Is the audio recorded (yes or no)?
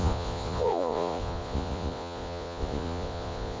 no